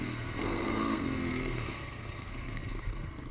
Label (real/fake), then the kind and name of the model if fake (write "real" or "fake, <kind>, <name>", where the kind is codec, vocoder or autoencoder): fake, codec, SNAC